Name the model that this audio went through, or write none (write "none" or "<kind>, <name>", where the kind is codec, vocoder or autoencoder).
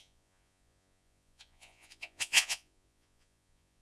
vocoder, Vocos